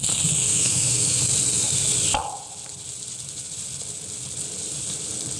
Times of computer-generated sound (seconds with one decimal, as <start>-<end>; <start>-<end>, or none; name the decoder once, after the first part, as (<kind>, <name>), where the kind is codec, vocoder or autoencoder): 0.5-1.2 (autoencoder, DAC-VAE)